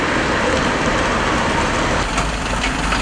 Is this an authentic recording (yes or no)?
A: yes